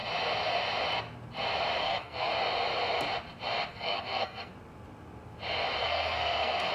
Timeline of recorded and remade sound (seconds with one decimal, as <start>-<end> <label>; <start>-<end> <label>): 0.0-1.8 recorded; 1.8-2.3 remade; 2.3-3.7 recorded; 3.7-4.5 remade; 4.5-5.8 recorded; 5.8-6.7 remade